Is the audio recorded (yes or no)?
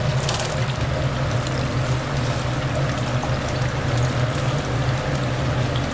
yes